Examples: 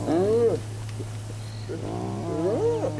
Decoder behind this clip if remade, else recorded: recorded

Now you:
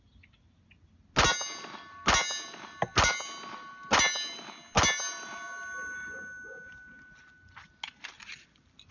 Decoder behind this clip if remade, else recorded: recorded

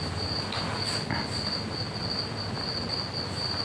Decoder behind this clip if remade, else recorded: recorded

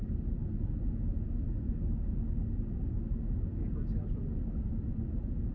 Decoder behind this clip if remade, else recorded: recorded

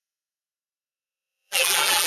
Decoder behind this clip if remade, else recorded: remade, vocoder, BigVGAN v2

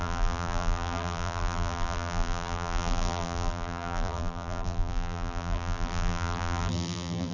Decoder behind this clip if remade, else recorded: remade, vocoder, BigVGAN v2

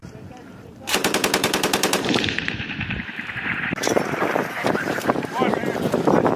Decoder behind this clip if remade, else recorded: remade, vocoder, BigVGAN v2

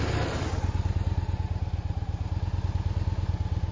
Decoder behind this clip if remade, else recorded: recorded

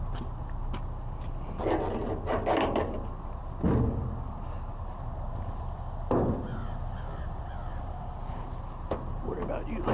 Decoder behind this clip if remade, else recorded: recorded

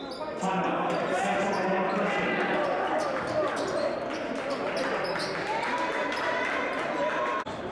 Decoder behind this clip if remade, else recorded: recorded